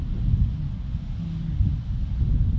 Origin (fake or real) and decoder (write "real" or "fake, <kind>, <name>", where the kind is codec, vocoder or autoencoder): real